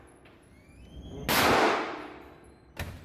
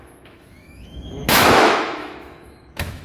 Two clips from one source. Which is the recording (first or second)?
first